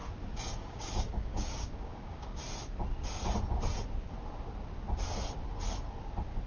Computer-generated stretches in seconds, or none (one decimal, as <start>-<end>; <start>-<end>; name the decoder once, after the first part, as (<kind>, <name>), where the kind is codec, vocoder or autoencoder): 0.0-2.4 (codec, DAC)